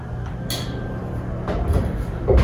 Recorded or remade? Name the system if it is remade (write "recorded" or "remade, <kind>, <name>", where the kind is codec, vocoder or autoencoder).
recorded